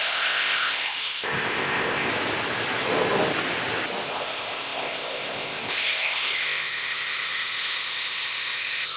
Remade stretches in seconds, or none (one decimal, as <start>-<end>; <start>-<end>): 0.0-2.1; 4.1-9.0